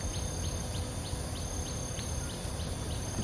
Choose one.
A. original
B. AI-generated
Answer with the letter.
A